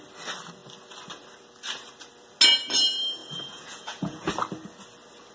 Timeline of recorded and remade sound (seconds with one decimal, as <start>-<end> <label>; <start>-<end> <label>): 0.0-3.2 recorded; 3.2-4.3 remade; 4.3-5.3 recorded